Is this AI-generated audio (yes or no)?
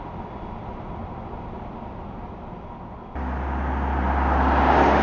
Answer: no